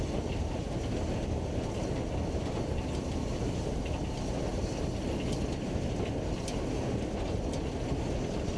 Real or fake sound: real